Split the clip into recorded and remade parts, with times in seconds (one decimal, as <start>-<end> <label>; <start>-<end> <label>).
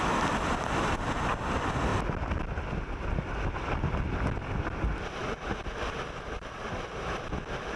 0.0-7.8 recorded